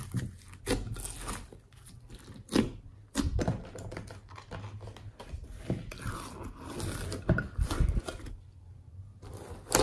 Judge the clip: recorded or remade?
recorded